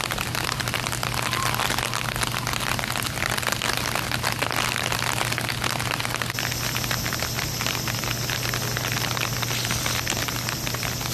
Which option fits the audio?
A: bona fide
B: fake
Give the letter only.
A